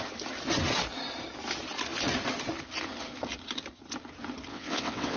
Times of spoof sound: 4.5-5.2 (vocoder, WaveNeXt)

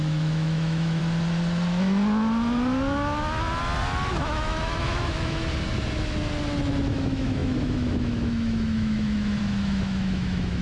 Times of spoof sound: 0.0-1.0 (autoencoder, DAC-VAE); 4.2-5.4; 6.9-10.6

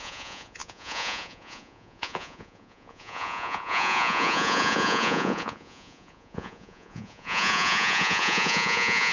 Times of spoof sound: 0.0-9.1 (vocoder, Vocos)

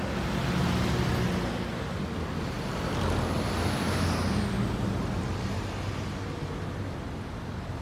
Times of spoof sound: none

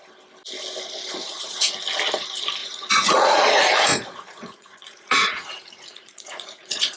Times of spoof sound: 1.2-1.7 (vocoder, Vocos); 2.6-7.0

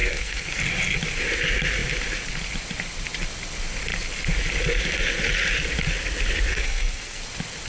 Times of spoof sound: 0.0-0.6 (codec, SNAC); 6.5-7.2

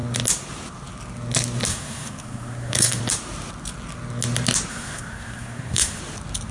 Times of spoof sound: 1.7-3.0 (codec, SNAC); 4.7-6.0

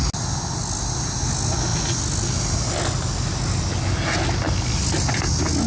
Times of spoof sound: none